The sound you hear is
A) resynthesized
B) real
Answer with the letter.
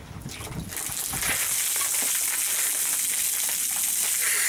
B